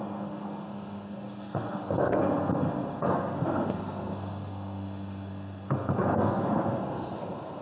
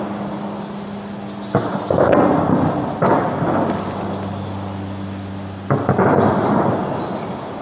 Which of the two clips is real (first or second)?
second